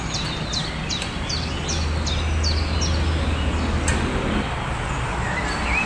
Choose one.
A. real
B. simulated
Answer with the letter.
A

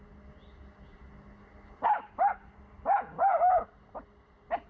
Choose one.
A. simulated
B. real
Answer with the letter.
B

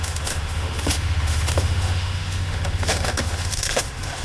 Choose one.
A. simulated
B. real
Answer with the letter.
A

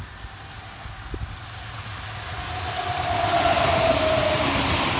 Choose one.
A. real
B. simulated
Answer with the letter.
A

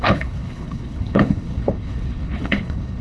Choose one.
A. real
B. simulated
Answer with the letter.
B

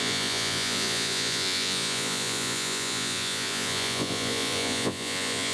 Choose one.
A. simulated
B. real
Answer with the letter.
A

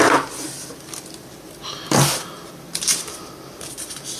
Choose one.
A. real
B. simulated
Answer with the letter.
B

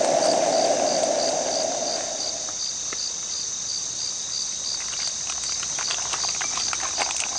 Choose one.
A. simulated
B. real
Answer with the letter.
B